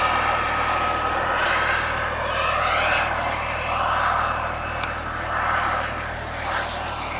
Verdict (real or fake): real